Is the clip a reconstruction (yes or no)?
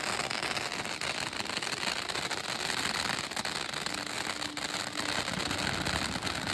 no